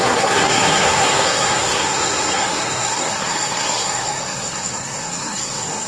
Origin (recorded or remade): remade